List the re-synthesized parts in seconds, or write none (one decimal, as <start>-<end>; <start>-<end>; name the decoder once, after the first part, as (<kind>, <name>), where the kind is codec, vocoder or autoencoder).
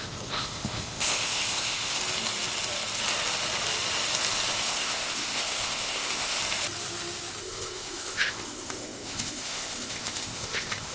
0.0-2.0 (codec, ZipCodec); 4.6-6.4; 7.4-10.9